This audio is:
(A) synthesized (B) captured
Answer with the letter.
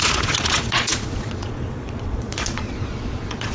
A